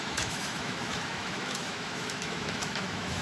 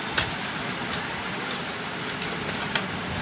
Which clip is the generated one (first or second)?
first